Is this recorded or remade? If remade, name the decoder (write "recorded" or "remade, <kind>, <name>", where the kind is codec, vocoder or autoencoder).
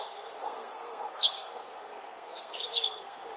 remade, codec, SNAC